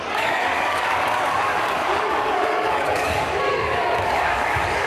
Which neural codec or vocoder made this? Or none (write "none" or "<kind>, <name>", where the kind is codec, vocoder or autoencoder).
codec, DAC